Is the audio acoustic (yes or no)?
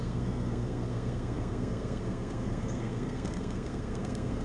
no